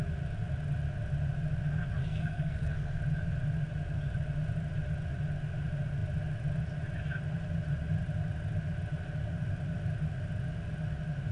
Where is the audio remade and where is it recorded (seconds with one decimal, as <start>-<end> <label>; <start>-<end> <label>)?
0.0-2.0 recorded; 2.0-3.0 remade; 3.0-11.3 recorded